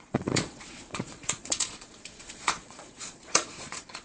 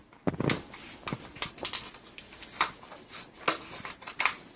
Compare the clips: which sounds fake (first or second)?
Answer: first